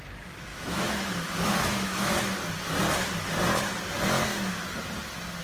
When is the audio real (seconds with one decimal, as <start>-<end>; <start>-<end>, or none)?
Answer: 0.0-0.5; 2.2-5.4